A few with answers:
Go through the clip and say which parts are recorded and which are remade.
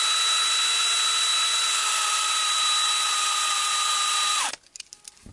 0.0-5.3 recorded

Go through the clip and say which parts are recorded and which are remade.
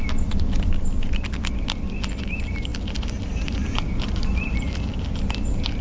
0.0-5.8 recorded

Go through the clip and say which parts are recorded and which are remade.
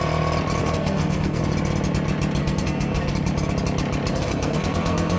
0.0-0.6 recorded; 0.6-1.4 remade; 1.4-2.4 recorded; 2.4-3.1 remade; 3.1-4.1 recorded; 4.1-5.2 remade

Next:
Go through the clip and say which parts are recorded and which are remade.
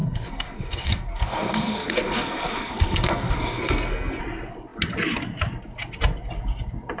0.0-4.2 remade; 4.2-7.0 recorded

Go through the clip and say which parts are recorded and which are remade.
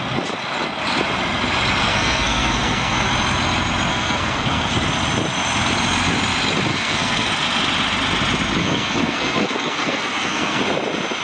0.0-1.8 recorded; 1.8-3.1 remade; 3.1-3.9 recorded; 3.9-4.7 remade; 4.7-6.7 recorded; 6.7-7.3 remade; 7.3-8.6 recorded; 8.6-10.6 remade; 10.6-11.2 recorded